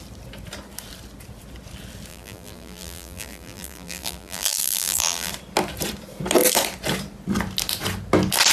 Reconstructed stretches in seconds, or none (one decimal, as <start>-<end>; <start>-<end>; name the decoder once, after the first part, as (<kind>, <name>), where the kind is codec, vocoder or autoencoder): 2.1-5.3 (vocoder, BigVGAN v2)